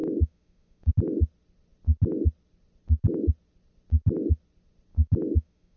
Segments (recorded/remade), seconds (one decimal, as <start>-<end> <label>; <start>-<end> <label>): 0.0-0.9 remade; 0.9-4.9 recorded; 4.9-5.8 remade